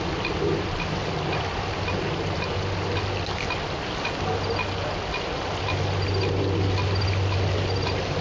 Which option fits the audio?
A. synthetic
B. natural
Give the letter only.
B